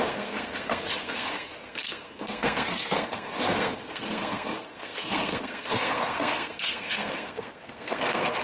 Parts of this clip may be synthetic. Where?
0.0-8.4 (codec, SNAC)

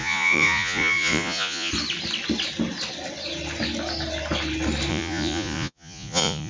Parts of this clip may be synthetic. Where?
0.0-1.7 (vocoder, Vocos); 4.9-6.5

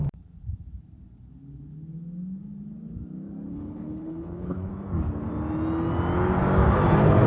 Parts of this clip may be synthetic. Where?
3.5-4.7 (codec, HILCodec)

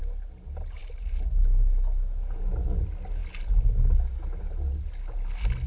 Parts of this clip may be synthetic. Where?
none

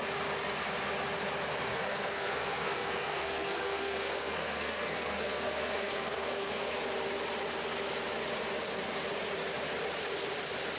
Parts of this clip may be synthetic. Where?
1.7-6.7 (codec, SNAC)

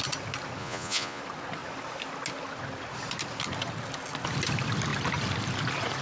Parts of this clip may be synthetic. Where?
0.6-1.2 (vocoder, Vocos)

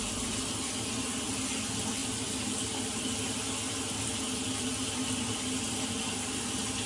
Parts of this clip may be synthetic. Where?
none